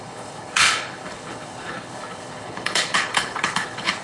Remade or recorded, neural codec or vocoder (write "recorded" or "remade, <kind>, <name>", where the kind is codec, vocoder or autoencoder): remade, codec, HILCodec